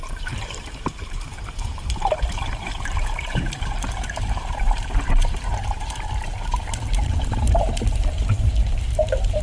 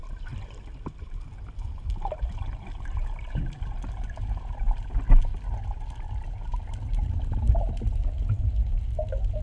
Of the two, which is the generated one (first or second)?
first